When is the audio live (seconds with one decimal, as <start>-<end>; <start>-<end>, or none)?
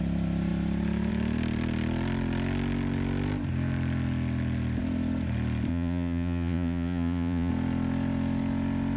0.0-5.7; 7.5-9.0